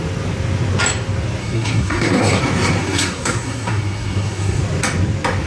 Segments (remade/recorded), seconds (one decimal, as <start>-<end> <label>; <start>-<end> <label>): 0.0-1.4 recorded; 1.4-2.4 remade; 2.4-2.8 recorded; 2.8-4.6 remade; 4.6-5.5 recorded